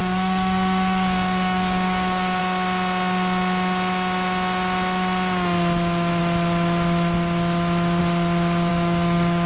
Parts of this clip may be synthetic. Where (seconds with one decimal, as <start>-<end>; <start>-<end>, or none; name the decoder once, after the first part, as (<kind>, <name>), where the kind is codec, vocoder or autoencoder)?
0.0-2.4 (codec, DAC); 8.7-9.5